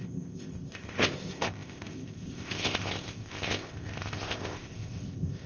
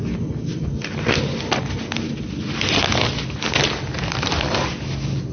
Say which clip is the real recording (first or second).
second